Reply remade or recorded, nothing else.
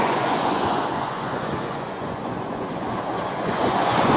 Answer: remade